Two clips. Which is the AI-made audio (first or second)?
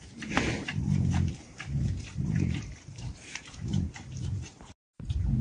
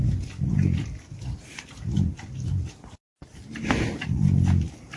first